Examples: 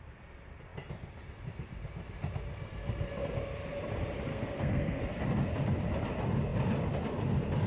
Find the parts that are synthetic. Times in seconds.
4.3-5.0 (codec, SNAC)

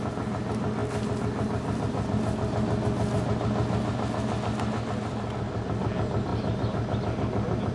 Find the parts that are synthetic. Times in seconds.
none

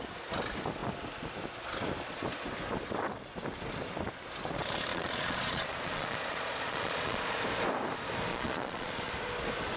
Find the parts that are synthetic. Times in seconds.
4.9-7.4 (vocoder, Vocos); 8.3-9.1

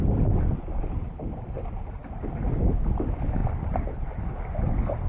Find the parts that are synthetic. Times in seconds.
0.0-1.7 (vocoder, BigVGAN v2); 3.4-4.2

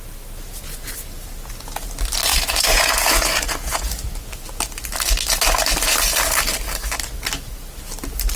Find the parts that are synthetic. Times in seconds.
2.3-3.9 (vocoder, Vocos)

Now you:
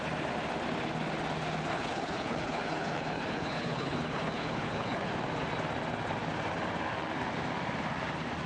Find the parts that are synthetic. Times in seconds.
1.7-5.1 (codec, HILCodec)

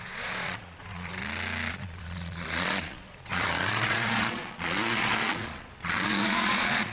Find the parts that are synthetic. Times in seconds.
0.0-1.2 (vocoder, Vocos); 1.7-6.9